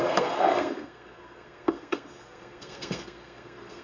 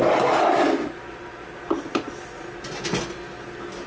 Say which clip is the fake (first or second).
first